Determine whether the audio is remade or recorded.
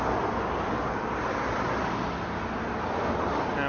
recorded